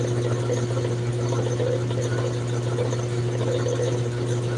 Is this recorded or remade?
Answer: recorded